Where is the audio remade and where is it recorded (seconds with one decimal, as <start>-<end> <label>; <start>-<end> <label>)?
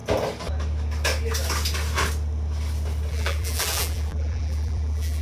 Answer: 0.0-3.1 recorded; 3.1-5.2 remade